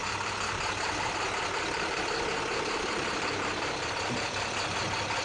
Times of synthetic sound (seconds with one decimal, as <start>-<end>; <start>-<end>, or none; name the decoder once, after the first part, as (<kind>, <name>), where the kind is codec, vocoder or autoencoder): 0.0-5.2 (vocoder, BigVGAN v2)